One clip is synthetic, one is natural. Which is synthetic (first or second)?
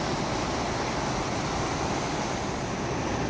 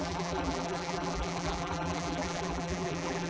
second